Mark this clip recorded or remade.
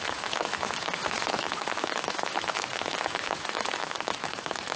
remade